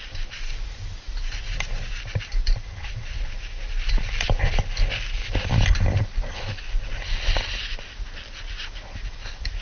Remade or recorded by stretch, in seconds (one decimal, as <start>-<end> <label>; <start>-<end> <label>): 0.0-2.4 recorded; 2.4-4.0 remade; 4.0-5.2 recorded; 5.2-6.1 remade; 6.1-9.6 recorded